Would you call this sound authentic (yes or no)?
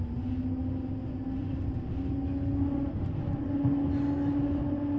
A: yes